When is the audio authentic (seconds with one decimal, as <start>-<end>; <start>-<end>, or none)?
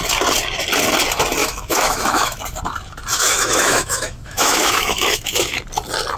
0.0-1.4; 2.4-3.1; 5.6-6.2